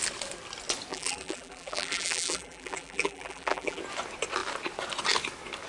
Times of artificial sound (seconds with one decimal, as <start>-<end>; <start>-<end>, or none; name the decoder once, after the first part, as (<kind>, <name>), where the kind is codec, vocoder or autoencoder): 0.9-3.8 (vocoder, BigVGAN v2)